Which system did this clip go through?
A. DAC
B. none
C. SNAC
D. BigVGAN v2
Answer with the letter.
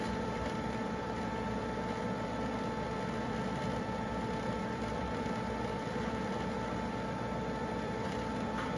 D